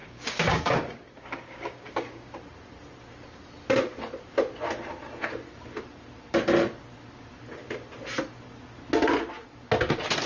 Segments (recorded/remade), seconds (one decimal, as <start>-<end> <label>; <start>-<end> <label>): 0.0-2.3 remade; 2.3-10.3 recorded